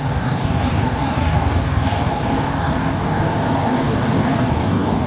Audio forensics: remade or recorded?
remade